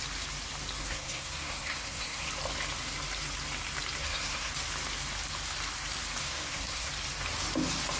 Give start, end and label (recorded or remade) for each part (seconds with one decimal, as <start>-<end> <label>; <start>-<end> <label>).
0.0-0.8 recorded; 0.8-2.3 remade; 2.3-4.0 recorded; 4.0-4.5 remade; 4.5-6.2 recorded; 6.2-6.9 remade; 6.9-8.0 recorded